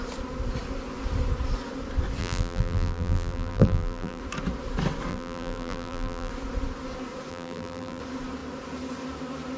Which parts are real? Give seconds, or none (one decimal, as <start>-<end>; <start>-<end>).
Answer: 0.0-2.2; 4.2-5.1; 6.3-7.3; 8.0-9.6